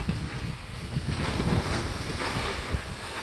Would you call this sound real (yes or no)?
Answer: no